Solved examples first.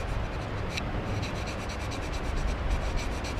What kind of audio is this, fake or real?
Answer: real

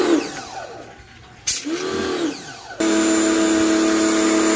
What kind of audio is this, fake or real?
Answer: real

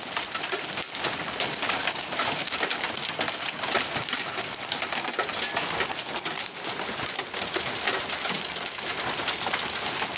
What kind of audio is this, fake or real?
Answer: real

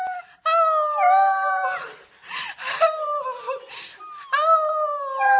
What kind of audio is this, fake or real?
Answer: real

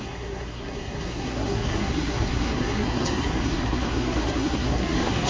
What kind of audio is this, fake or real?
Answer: fake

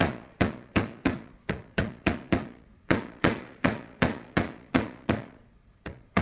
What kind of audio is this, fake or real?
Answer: fake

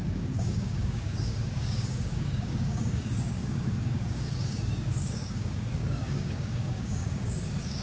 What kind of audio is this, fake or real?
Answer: fake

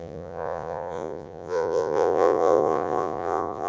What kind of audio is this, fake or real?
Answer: fake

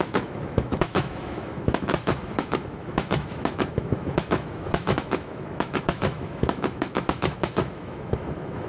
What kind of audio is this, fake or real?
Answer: fake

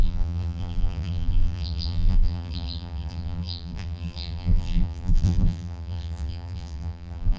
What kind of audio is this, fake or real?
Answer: fake